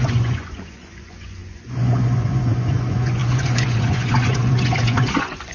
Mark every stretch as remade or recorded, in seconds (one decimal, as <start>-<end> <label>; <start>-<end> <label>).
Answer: 0.0-5.5 remade